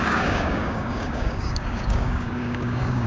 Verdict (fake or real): fake